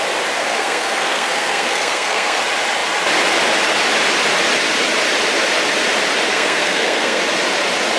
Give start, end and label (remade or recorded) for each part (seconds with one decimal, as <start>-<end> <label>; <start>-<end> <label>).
0.0-0.4 recorded; 0.4-2.4 remade; 2.4-6.3 recorded; 6.3-7.2 remade; 7.2-8.0 recorded